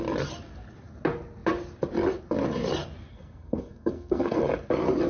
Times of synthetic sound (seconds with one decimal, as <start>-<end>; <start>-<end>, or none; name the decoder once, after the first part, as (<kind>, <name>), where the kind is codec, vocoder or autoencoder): 3.1-4.4 (codec, SNAC)